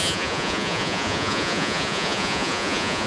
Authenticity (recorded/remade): remade